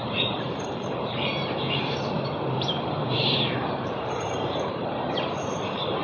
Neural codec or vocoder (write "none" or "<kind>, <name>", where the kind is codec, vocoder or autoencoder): vocoder, BigVGAN v2